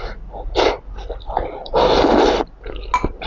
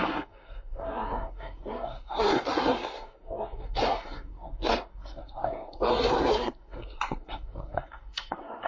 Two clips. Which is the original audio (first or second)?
first